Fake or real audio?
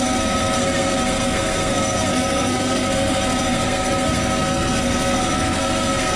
fake